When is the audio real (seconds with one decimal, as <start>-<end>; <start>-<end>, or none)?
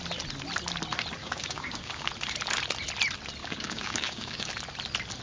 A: 0.0-1.2; 2.1-3.4; 4.5-5.2